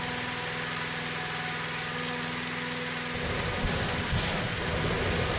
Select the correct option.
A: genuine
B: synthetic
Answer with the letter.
A